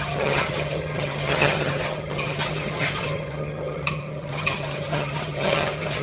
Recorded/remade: remade